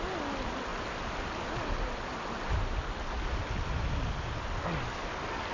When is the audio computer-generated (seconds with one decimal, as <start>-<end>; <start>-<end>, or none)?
none

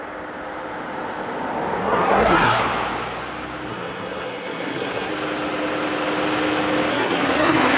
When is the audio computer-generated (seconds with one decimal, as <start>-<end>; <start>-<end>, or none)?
1.8-2.6; 3.7-5.1; 6.9-7.8